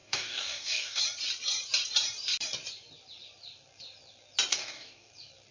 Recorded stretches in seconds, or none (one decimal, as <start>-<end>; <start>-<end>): 1.0-4.5; 5.1-5.5